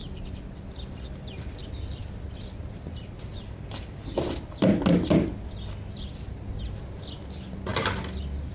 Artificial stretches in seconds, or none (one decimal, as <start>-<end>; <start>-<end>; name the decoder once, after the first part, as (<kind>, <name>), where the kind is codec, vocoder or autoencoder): none